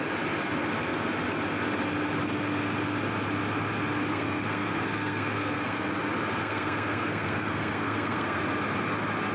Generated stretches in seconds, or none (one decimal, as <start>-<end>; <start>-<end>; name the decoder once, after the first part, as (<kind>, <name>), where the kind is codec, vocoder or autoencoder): 4.1-5.9 (codec, SNAC); 6.4-8.4